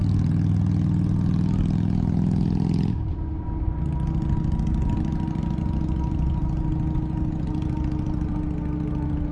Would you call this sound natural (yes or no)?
yes